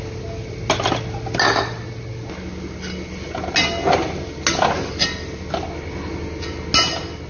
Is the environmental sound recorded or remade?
recorded